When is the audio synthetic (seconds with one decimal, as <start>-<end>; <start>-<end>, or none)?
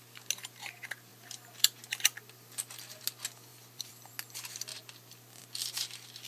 1.1-3.0; 3.5-4.1; 4.7-5.4